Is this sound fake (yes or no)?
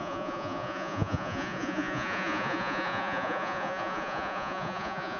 yes